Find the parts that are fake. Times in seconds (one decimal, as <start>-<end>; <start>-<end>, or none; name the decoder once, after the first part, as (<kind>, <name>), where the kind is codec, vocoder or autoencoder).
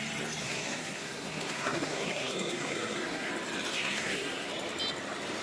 0.4-3.3 (codec, SNAC); 3.7-4.5